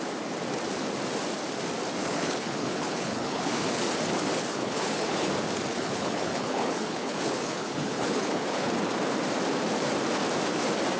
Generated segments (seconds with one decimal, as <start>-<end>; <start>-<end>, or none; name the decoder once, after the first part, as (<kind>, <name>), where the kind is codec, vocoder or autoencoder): 2.0-3.8 (codec, HILCodec); 4.5-5.3; 5.7-8.7